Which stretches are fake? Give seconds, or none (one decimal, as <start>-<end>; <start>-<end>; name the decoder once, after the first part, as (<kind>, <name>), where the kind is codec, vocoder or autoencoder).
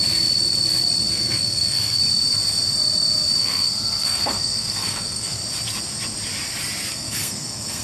1.1-2.0 (codec, SNAC); 3.4-5.4; 6.9-7.8